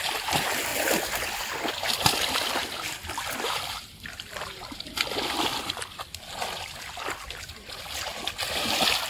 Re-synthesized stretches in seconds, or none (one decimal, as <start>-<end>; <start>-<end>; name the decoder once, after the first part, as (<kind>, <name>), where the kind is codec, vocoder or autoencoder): 0.7-1.7 (vocoder, BigVGAN v2); 2.6-5.0